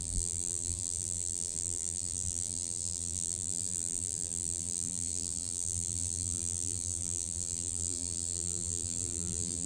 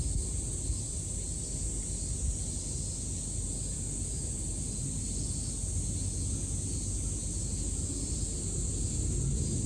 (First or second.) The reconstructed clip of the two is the first